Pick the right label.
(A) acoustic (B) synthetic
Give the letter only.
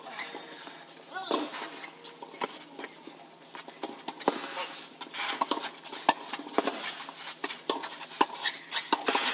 A